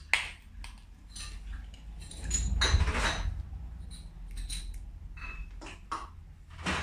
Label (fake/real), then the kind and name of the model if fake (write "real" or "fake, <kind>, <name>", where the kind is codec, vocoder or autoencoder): real